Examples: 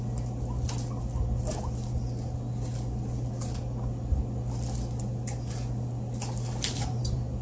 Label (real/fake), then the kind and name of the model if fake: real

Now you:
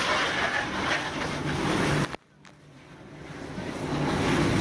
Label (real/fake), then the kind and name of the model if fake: real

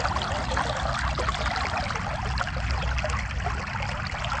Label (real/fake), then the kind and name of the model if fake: real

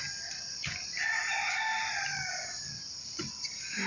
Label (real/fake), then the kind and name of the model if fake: fake, vocoder, BigVGAN v2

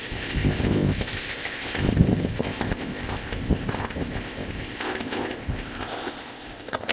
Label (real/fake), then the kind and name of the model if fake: fake, codec, ZipCodec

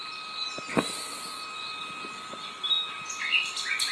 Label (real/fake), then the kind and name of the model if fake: real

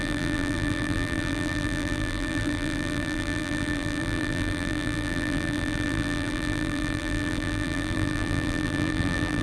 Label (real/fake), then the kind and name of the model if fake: fake, vocoder, BigVGAN v2